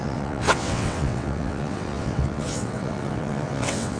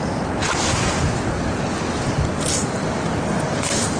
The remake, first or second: first